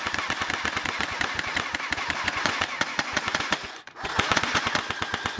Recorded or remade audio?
remade